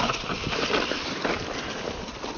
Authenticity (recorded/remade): recorded